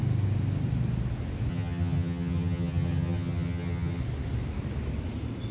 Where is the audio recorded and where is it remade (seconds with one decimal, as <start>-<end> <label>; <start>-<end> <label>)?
0.0-1.5 recorded; 1.5-4.0 remade; 4.0-5.5 recorded